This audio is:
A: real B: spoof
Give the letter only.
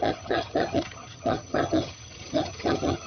B